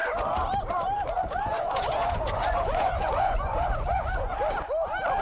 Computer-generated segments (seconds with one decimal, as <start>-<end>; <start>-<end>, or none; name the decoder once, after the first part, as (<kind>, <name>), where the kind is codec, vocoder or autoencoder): 1.2-4.3 (vocoder, Vocos)